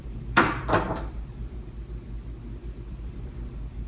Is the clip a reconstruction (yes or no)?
yes